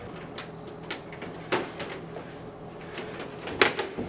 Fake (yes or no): no